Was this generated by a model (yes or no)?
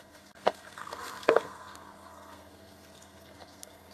yes